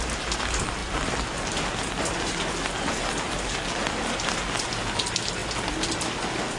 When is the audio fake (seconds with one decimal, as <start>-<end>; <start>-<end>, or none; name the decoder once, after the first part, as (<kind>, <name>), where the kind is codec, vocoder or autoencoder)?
none